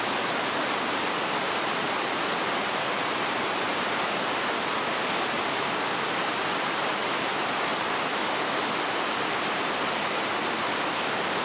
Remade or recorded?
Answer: recorded